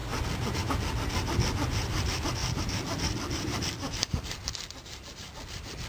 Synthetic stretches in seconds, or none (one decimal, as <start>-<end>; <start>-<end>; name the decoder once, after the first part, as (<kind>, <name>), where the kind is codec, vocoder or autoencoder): 2.4-5.9 (vocoder, BigVGAN v2)